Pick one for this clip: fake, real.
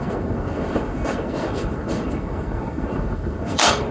fake